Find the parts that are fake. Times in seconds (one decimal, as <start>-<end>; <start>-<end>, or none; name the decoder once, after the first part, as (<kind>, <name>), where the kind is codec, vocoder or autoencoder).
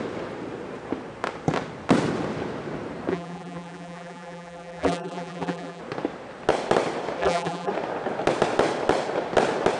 3.1-5.8 (vocoder, BigVGAN v2); 7.2-7.7